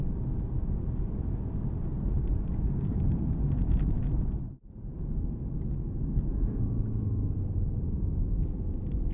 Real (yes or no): no